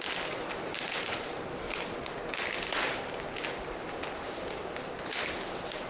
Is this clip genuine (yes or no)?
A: yes